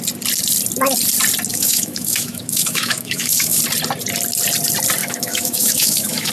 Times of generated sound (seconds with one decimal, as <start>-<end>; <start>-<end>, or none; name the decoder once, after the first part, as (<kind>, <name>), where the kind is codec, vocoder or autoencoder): 1.5-3.6 (autoencoder, DAC-VAE); 5.0-6.3